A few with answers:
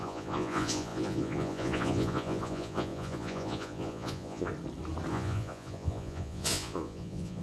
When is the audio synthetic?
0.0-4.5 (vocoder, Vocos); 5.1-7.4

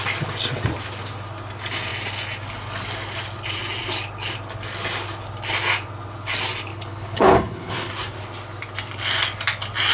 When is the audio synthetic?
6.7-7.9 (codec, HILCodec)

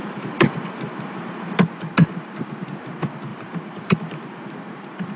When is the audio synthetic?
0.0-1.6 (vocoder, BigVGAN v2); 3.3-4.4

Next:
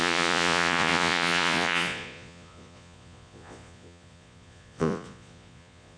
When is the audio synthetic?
0.0-6.0 (vocoder, Vocos)